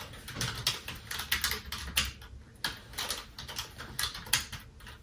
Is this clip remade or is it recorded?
recorded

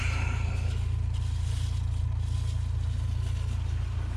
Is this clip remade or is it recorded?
recorded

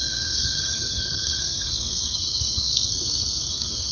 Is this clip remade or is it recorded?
remade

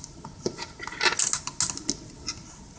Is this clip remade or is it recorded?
recorded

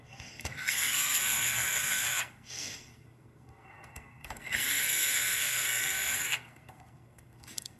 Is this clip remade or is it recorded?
remade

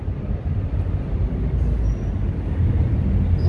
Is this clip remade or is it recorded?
recorded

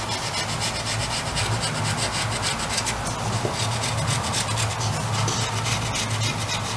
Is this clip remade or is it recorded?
recorded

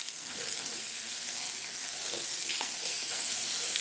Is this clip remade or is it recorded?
remade